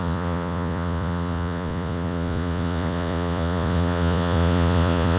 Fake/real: fake